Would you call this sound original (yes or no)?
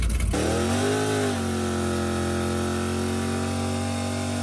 yes